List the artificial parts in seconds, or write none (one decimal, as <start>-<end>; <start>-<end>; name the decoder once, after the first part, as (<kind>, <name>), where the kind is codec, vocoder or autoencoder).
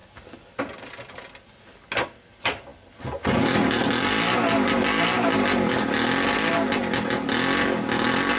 none